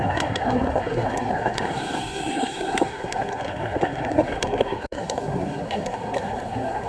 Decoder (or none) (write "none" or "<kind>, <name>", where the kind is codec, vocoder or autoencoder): codec, SNAC